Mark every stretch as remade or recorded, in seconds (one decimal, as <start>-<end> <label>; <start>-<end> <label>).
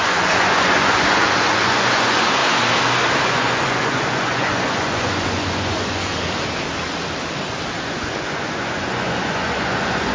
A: 0.0-2.4 remade; 2.4-3.2 recorded; 3.2-6.1 remade; 6.1-7.8 recorded; 7.8-10.1 remade